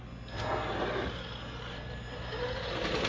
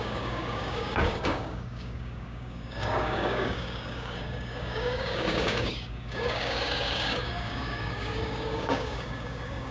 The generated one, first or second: second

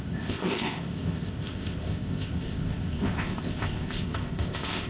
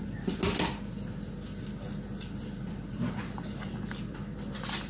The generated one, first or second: first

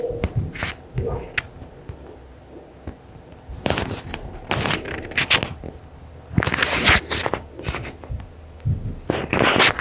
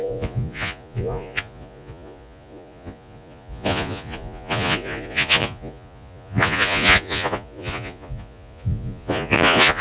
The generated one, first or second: second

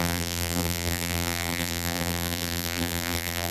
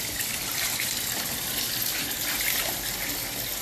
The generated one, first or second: first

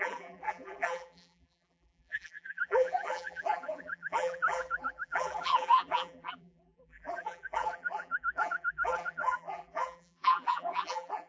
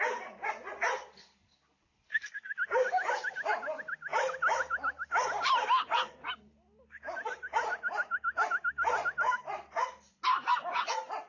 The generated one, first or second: first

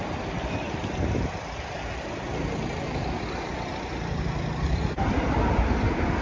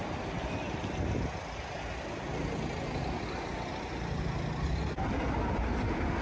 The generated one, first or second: first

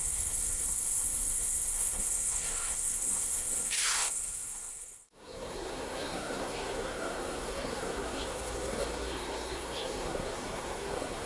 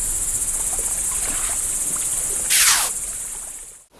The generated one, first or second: first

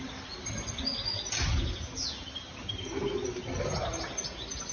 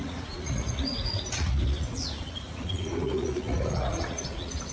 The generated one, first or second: second